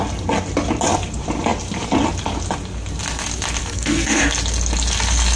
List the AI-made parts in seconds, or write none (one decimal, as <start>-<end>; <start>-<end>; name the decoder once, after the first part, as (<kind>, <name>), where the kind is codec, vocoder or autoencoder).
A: 3.6-4.2 (codec, SNAC)